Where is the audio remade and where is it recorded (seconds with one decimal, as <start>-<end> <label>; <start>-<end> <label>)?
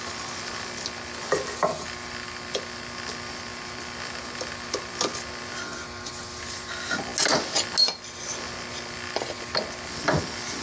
0.0-10.6 recorded